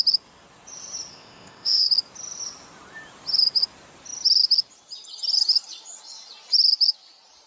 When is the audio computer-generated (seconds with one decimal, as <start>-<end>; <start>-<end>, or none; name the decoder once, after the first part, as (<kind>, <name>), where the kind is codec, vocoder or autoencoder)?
1.1-1.9 (codec, ZipCodec)